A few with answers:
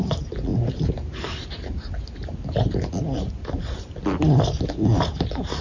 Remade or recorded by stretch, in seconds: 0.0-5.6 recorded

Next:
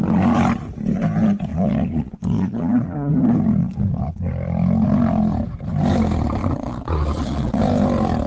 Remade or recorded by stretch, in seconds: 0.0-1.5 recorded; 1.5-3.1 remade; 3.1-3.6 recorded; 3.6-4.3 remade; 4.3-6.4 recorded; 6.4-7.6 remade; 7.6-8.3 recorded

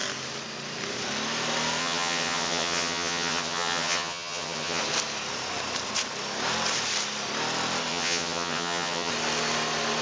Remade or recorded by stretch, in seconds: 0.0-1.8 recorded; 1.8-4.8 remade; 4.8-7.9 recorded; 7.9-9.1 remade; 9.1-10.0 recorded